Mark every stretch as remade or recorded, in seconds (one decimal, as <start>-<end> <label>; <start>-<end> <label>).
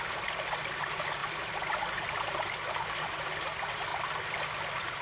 0.0-5.0 recorded